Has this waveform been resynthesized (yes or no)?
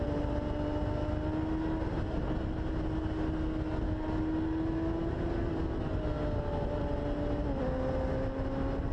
no